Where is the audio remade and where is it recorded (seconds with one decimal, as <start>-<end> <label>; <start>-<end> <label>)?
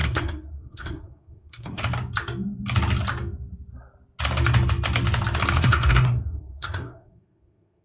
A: 0.0-1.8 remade; 1.8-5.6 recorded; 5.6-7.8 remade